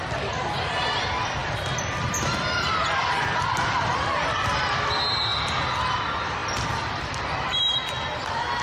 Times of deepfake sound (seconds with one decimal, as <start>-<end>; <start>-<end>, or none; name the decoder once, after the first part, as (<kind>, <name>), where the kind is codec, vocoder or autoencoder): 1.4-4.7 (vocoder, BigVGAN v2); 6.4-7.6